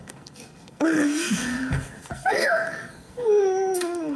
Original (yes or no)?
no